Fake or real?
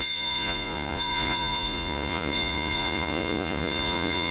fake